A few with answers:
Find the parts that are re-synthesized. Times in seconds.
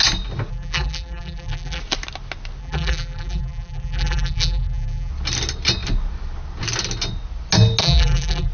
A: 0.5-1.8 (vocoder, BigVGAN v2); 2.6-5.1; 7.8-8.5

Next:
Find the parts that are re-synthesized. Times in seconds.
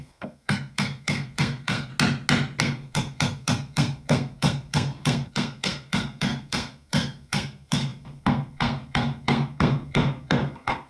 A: 0.0-1.9 (codec, SNAC); 2.6-10.9